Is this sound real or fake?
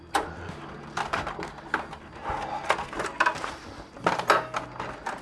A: real